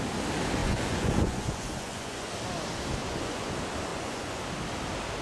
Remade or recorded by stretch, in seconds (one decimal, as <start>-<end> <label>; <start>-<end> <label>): 0.0-0.6 recorded; 0.6-2.3 remade; 2.3-3.0 recorded; 3.0-3.5 remade; 3.5-3.9 recorded; 3.9-4.4 remade; 4.4-5.2 recorded